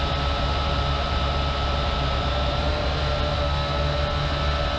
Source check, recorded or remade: recorded